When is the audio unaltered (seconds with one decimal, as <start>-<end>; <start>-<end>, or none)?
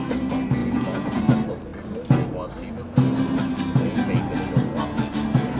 0.0-0.6; 1.2-5.6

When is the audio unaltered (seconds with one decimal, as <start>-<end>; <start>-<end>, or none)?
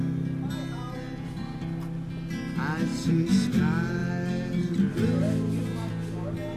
0.0-2.9; 3.6-6.6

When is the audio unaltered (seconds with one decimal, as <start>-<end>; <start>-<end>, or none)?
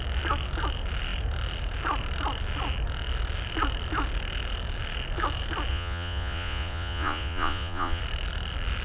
0.0-5.7; 8.0-8.8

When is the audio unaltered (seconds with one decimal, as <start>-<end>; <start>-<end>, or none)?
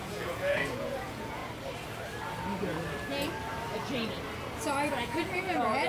1.4-4.9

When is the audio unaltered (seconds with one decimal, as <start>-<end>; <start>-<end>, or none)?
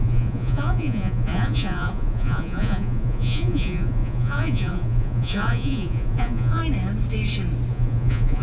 6.6-7.7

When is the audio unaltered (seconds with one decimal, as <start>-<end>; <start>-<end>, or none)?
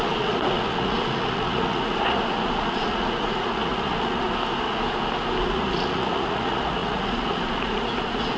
4.3-5.4